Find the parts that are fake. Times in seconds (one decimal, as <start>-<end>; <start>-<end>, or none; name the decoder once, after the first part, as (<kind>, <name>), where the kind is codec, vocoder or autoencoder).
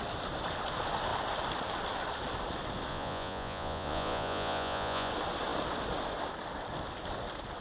2.9-5.1 (vocoder, Vocos)